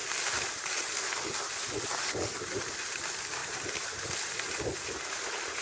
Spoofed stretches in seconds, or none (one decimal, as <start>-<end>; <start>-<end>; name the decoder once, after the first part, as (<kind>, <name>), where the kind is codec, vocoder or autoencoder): none